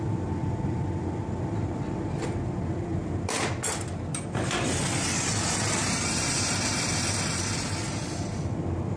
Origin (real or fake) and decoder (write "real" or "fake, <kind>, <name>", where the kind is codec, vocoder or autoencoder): real